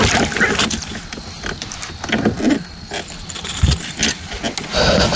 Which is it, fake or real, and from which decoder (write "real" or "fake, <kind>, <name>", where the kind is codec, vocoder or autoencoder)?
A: real